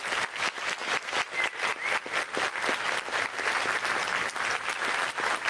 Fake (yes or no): no